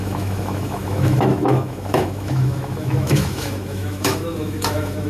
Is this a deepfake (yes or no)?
yes